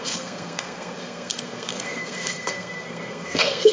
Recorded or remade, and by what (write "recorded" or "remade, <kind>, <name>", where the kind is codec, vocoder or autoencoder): remade, codec, SNAC